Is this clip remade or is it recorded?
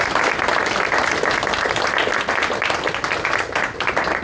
recorded